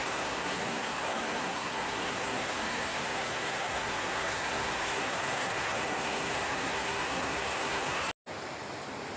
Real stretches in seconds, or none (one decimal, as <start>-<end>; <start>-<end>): 8.1-9.2